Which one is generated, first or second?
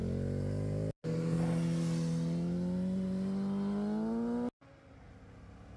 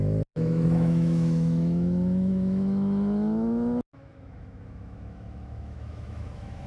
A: second